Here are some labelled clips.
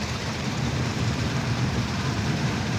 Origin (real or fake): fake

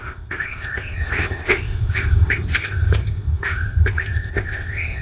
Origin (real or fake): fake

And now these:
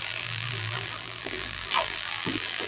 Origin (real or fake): fake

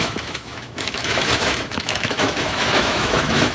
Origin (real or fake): fake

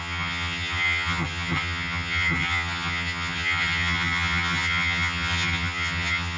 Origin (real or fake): fake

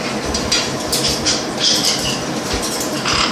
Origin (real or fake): fake